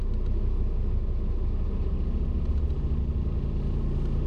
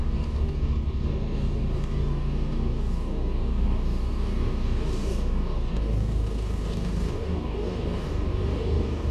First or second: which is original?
first